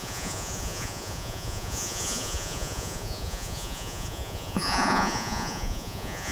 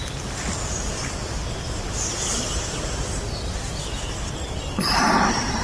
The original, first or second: second